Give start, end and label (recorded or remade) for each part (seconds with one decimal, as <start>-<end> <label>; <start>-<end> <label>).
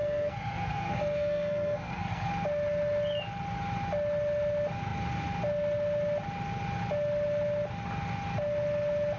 0.0-2.3 remade; 2.3-9.2 recorded